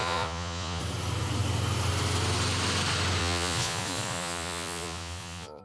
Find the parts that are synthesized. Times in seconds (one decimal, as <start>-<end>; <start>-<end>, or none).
0.0-0.8; 3.2-5.6